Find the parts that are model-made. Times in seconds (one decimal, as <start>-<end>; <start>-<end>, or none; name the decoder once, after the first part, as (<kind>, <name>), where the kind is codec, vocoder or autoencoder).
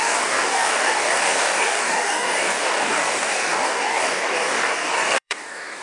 0.0-5.8 (codec, DAC)